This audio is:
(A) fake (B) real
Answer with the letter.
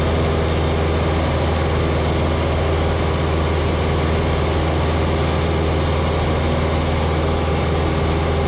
B